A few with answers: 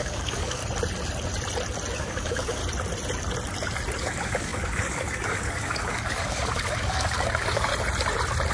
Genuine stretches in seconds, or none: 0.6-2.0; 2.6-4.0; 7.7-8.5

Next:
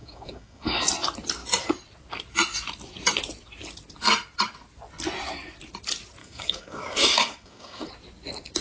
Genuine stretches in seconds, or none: 0.8-6.2; 7.9-8.6

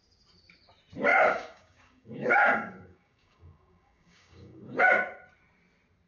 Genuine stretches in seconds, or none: 0.0-1.1; 4.8-6.1

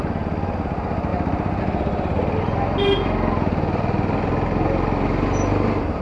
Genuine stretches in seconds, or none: 0.0-6.0